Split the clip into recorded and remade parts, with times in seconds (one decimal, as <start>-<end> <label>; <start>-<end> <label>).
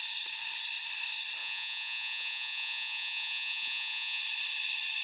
0.0-1.4 recorded; 1.4-4.2 remade; 4.2-5.0 recorded